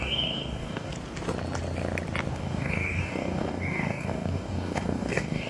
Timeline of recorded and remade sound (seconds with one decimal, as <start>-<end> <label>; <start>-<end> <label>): 0.0-0.9 remade; 0.9-2.3 recorded; 2.3-5.5 remade

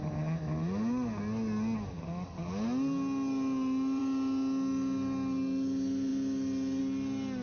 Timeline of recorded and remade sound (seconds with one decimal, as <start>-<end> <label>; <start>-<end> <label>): 0.0-7.4 recorded